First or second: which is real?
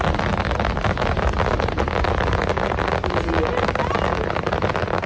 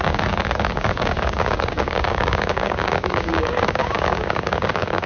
first